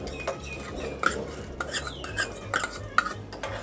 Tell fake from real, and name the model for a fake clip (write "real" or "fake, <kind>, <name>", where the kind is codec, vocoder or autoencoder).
real